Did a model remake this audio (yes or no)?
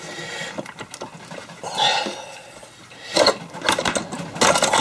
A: no